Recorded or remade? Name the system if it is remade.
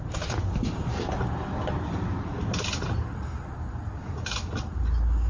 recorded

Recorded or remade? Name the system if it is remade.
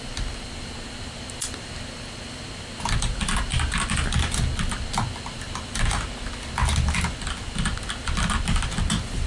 recorded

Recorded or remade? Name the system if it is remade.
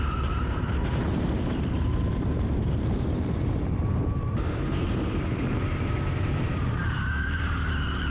remade, vocoder, BigVGAN v2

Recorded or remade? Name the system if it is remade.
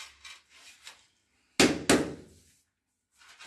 recorded